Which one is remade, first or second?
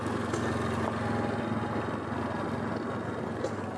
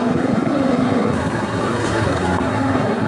second